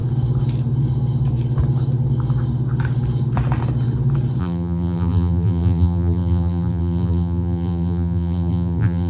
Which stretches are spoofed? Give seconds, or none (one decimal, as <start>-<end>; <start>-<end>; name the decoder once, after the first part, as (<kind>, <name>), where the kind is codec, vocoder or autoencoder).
4.4-9.1 (vocoder, BigVGAN v2)